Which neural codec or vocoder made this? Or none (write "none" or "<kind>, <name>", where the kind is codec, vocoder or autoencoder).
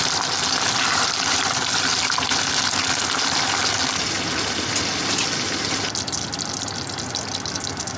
none